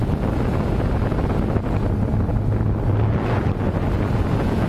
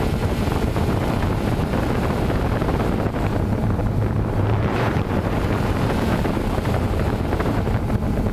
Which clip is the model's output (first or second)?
second